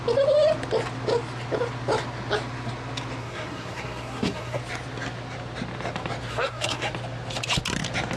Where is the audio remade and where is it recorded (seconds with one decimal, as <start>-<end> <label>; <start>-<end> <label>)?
0.0-3.2 recorded; 3.2-4.6 remade; 4.6-6.3 recorded; 6.3-6.9 remade; 6.9-8.2 recorded